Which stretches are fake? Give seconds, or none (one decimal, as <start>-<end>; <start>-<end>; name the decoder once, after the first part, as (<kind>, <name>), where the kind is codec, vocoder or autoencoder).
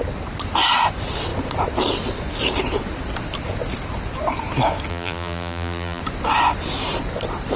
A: 4.9-6.0 (vocoder, BigVGAN v2)